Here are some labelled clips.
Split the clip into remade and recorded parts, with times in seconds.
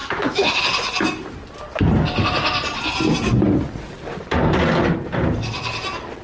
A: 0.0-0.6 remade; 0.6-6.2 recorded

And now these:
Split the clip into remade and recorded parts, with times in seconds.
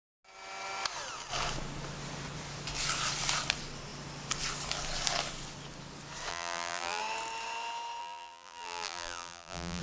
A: 0.0-6.3 recorded; 6.3-7.0 remade; 7.0-8.0 recorded; 8.0-9.8 remade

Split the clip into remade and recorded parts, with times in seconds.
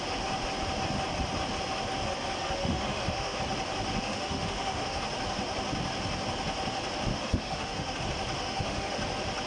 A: 0.0-2.6 recorded; 2.6-3.4 remade; 3.4-4.0 recorded; 4.0-5.0 remade; 5.0-7.1 recorded; 7.1-8.0 remade; 8.0-8.4 recorded; 8.4-9.0 remade; 9.0-9.5 recorded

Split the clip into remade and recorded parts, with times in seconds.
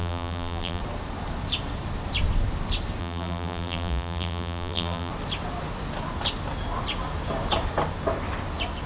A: 0.0-0.8 remade; 0.8-3.0 recorded; 3.0-5.1 remade; 5.1-8.9 recorded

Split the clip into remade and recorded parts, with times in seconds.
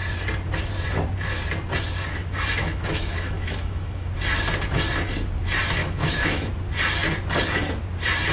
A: 0.0-2.6 recorded; 2.6-4.1 remade; 4.1-5.8 recorded; 5.8-6.5 remade; 6.5-8.3 recorded